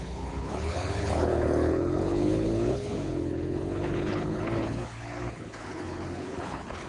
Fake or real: fake